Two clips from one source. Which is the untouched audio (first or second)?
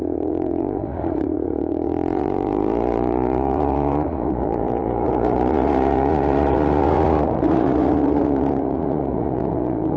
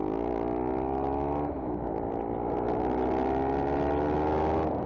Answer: second